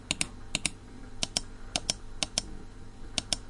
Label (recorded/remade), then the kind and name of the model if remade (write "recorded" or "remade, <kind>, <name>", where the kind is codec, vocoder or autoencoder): recorded